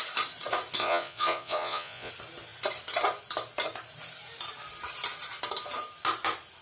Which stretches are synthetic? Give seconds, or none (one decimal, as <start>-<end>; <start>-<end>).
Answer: 0.8-2.1